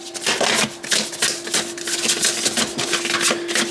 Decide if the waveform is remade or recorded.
recorded